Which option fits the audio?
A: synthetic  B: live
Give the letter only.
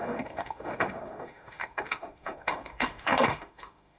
A